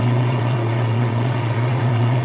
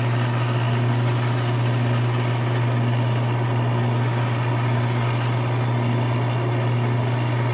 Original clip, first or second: second